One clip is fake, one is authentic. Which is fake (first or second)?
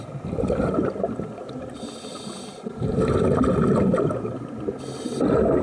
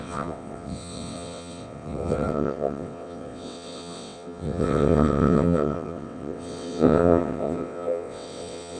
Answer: second